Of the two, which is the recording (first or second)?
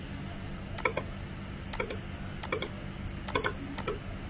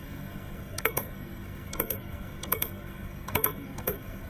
first